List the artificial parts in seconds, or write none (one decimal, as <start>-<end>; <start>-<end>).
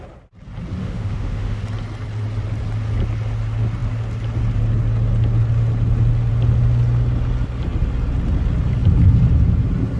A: 0.8-1.6